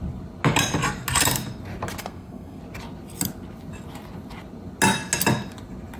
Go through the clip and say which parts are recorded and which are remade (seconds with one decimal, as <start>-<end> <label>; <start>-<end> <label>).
0.0-2.0 recorded; 2.0-2.6 remade; 2.6-6.0 recorded